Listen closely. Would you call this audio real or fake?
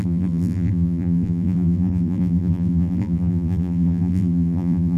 fake